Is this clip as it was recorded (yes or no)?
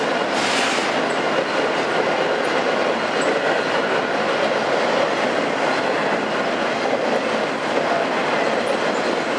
yes